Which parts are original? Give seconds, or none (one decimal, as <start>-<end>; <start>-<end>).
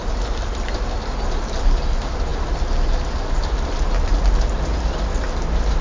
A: 0.0-5.8